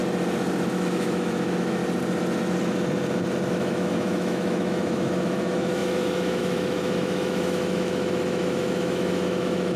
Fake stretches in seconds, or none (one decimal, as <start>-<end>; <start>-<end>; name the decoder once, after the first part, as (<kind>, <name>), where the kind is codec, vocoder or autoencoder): 0.7-1.8 (autoencoder, DAC-VAE); 3.5-9.8